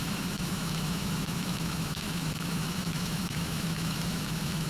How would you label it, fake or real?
fake